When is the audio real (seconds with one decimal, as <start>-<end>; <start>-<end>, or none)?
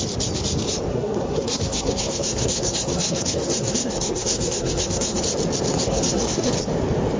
0.0-0.9; 5.2-5.7; 6.5-7.2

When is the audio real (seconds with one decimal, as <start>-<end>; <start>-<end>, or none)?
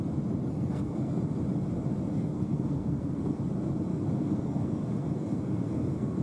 0.0-0.5; 1.2-2.1; 3.4-3.9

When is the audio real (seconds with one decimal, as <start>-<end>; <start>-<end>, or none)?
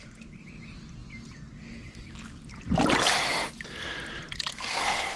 0.0-4.5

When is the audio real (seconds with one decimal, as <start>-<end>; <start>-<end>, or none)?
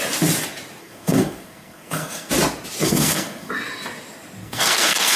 0.0-0.8; 2.3-2.8; 3.5-4.4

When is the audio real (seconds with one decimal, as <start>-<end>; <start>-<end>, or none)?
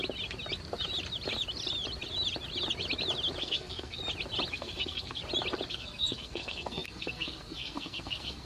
0.0-3.4; 4.0-4.5; 5.2-5.7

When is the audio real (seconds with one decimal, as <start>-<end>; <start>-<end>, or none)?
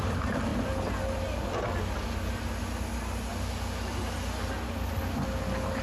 0.0-5.8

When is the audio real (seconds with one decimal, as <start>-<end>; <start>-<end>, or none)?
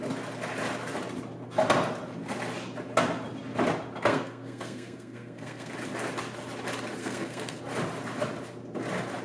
0.0-4.1; 5.7-7.0; 7.6-9.2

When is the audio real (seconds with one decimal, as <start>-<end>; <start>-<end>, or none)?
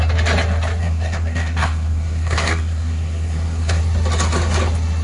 0.0-0.8; 3.8-5.0